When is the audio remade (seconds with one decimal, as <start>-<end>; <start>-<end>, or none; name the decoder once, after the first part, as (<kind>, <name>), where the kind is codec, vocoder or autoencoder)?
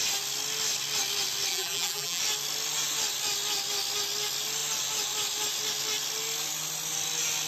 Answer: 1.5-2.2 (vocoder, BigVGAN v2)